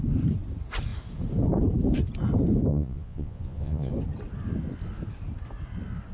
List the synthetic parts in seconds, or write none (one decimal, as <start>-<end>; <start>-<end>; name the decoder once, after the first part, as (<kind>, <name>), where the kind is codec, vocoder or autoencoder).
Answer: 2.7-3.9 (vocoder, Vocos)